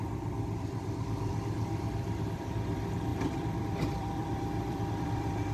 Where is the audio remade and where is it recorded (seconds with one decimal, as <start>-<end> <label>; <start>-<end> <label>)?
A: 0.0-5.5 remade